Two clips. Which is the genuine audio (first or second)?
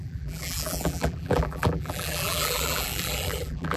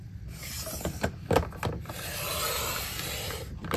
second